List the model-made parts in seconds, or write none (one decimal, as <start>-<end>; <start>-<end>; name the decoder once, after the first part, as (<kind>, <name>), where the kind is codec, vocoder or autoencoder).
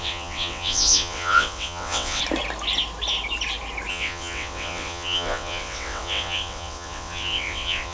0.0-2.2 (vocoder, WaveNeXt); 3.9-7.9